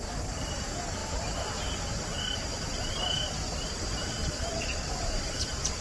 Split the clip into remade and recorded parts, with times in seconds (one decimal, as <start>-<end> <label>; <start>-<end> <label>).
0.0-4.2 recorded; 4.2-4.9 remade; 4.9-5.8 recorded